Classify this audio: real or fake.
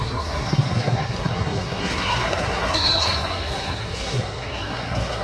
fake